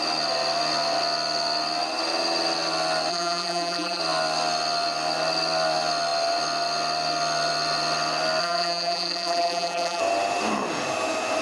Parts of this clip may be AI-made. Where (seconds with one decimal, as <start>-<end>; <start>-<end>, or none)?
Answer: 3.1-4.0; 8.4-10.0